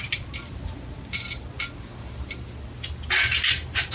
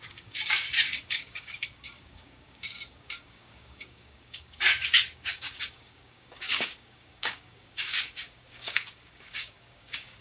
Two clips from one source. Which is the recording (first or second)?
first